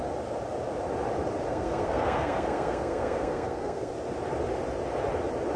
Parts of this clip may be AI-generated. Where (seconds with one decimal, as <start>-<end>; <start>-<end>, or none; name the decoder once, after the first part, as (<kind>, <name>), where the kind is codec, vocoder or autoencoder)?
1.5-3.9 (codec, SNAC)